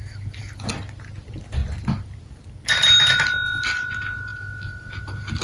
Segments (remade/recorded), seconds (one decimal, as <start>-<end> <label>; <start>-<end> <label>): 0.0-5.4 recorded